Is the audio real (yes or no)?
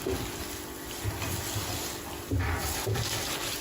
yes